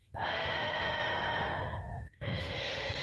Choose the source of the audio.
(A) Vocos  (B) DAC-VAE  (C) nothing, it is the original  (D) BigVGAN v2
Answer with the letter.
B